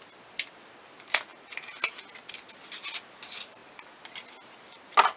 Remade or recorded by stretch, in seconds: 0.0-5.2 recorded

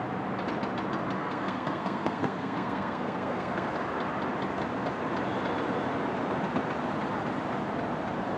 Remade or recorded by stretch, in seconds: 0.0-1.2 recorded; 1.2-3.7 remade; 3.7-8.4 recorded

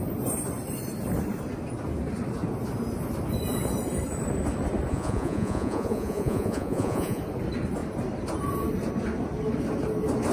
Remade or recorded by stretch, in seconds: 0.0-4.9 recorded; 4.9-7.2 remade; 7.2-10.3 recorded

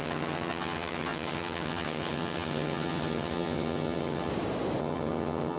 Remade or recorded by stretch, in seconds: 0.0-4.3 remade; 4.3-4.8 recorded; 4.8-5.6 remade

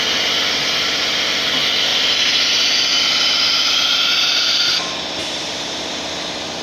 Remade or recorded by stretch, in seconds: 0.0-1.9 recorded; 1.9-3.0 remade; 3.0-5.2 recorded; 5.2-5.8 remade; 5.8-6.6 recorded

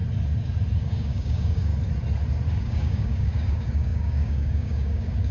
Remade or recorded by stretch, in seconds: 0.0-0.8 recorded; 0.8-1.7 remade; 1.7-2.5 recorded; 2.5-5.3 remade